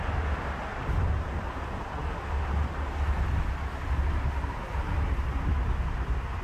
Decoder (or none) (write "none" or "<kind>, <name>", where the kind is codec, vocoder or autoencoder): none